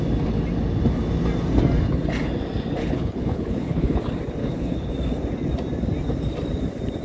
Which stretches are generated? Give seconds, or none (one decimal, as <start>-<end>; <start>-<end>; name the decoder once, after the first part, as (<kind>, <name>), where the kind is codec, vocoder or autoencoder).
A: 2.8-4.0 (codec, HILCodec); 4.4-4.9